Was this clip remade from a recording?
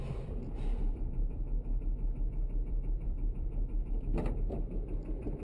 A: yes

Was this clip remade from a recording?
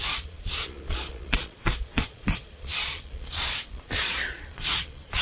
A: yes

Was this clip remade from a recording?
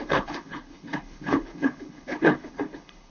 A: yes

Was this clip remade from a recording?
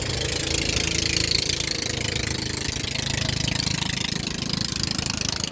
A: no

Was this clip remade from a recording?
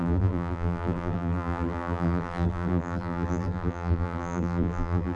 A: yes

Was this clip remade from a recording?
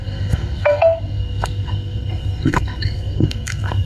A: yes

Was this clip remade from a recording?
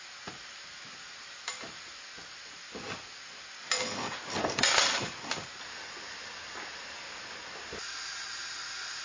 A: no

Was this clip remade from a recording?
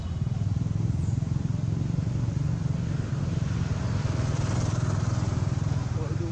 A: no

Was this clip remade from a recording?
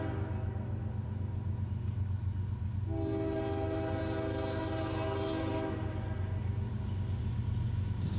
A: no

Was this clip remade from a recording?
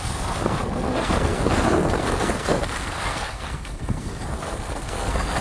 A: yes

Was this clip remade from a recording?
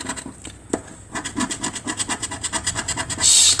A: no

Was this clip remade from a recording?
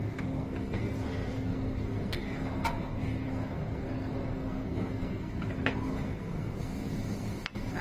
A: yes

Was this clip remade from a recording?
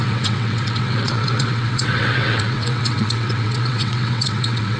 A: yes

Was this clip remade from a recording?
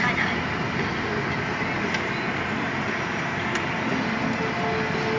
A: no